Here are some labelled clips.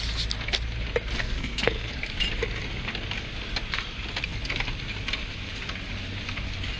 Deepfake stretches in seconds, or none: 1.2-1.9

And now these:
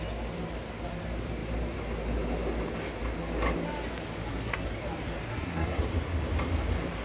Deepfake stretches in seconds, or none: 4.3-4.8; 5.3-5.8

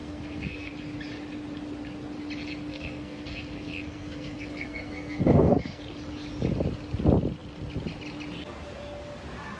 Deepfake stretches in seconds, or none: 0.0-0.7; 2.7-5.8